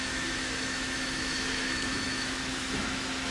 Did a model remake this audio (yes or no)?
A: yes